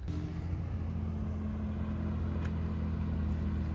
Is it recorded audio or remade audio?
recorded